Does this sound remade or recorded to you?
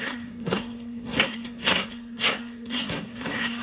remade